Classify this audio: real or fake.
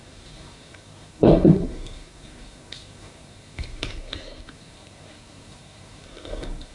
fake